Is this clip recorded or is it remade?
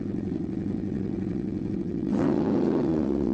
remade